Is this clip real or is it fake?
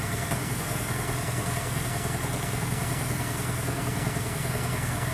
fake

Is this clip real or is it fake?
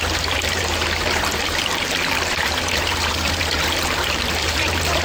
fake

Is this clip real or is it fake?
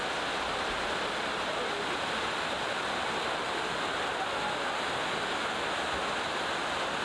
real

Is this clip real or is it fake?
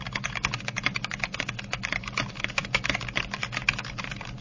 real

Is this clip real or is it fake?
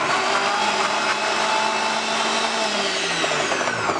real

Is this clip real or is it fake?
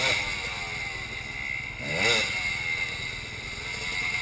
real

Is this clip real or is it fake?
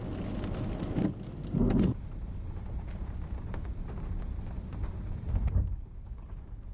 real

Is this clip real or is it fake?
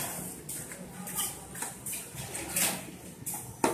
real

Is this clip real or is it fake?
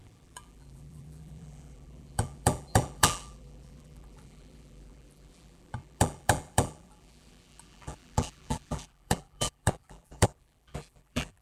fake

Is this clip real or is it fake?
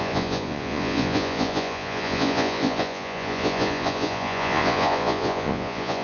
fake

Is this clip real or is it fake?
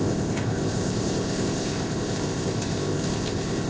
fake